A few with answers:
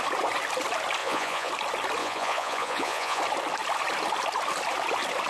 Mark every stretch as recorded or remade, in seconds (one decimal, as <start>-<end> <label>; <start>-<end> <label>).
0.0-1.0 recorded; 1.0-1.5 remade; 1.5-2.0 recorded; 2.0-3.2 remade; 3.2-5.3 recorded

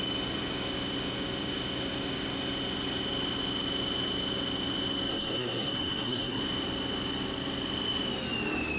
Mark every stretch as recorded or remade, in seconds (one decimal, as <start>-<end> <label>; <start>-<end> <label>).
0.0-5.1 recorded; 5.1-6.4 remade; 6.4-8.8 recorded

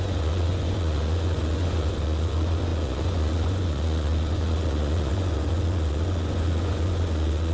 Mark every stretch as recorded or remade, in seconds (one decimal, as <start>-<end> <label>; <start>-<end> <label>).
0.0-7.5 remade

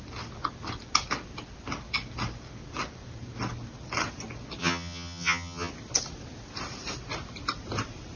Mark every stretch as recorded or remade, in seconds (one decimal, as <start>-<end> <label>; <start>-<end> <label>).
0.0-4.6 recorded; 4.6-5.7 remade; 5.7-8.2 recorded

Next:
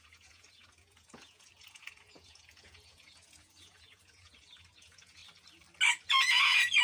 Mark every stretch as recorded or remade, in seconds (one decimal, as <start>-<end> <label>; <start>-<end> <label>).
0.0-5.2 remade; 5.2-6.0 recorded; 6.0-6.8 remade

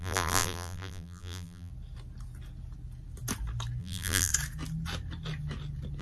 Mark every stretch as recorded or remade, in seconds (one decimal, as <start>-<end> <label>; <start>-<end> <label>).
0.0-1.7 remade; 1.7-3.8 recorded; 3.8-4.3 remade; 4.3-6.0 recorded

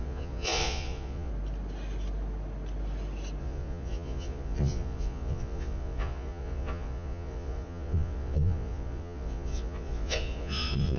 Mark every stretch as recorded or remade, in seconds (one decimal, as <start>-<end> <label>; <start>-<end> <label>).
0.0-1.3 remade; 1.3-3.4 recorded; 3.4-11.0 remade